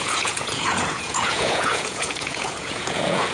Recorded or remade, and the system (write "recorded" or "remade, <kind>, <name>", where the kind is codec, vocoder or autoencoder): remade, vocoder, Vocos